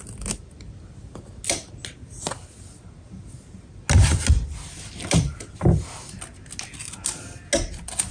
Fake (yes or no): no